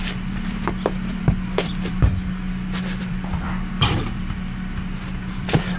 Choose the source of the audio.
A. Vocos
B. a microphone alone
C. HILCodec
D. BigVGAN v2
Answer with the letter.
D